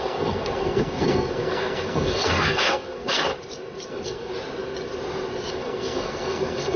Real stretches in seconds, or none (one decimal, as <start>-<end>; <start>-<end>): 3.3-3.9; 4.3-5.5